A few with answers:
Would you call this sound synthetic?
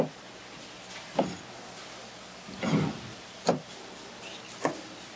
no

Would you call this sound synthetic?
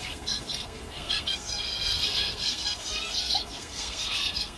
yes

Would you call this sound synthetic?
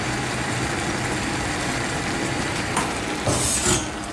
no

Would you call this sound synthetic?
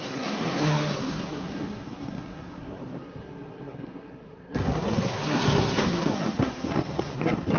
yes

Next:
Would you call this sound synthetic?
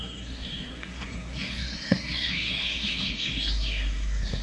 yes